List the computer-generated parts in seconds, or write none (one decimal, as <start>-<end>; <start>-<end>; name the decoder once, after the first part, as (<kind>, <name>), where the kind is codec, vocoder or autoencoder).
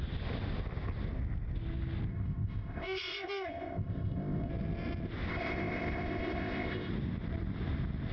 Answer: 2.1-4.5 (codec, ZipCodec); 5.3-6.9